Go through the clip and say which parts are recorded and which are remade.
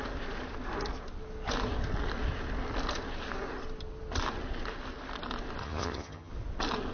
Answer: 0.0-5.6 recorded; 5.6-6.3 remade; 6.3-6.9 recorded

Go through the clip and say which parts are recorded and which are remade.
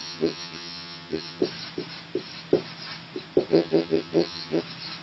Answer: 0.0-1.4 remade; 1.4-3.5 recorded; 3.5-4.6 remade; 4.6-5.0 recorded